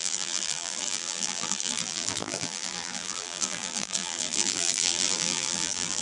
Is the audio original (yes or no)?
no